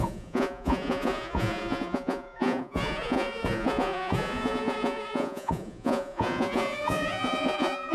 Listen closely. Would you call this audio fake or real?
fake